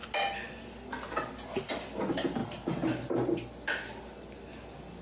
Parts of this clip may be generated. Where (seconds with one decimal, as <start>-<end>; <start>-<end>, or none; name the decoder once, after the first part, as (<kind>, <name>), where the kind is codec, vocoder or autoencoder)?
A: none